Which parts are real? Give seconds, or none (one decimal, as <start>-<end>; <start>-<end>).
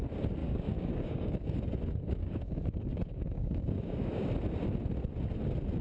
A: 0.0-0.4; 1.6-2.2; 4.3-5.8